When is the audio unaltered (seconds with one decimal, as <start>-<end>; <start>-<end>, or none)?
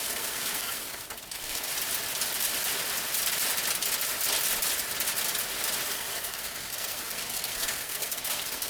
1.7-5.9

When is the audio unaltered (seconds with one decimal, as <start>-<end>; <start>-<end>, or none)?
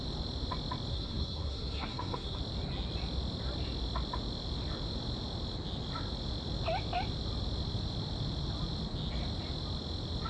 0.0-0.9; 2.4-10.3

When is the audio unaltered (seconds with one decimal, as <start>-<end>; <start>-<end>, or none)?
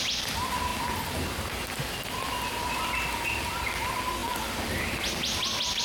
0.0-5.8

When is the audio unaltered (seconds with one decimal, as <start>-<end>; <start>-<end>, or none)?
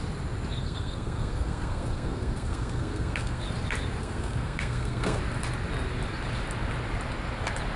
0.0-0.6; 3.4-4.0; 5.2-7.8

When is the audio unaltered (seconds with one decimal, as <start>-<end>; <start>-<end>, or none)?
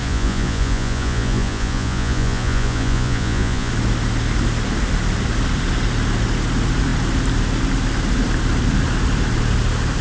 3.7-10.0